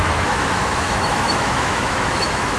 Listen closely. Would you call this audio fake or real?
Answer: fake